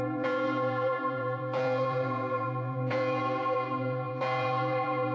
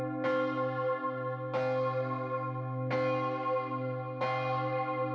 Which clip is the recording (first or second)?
second